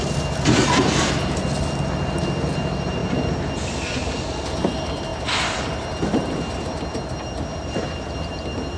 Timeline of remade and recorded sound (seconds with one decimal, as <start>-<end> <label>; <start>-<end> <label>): 0.0-8.8 recorded